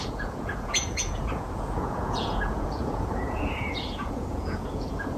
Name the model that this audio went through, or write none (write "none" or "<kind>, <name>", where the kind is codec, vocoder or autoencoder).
vocoder, Vocos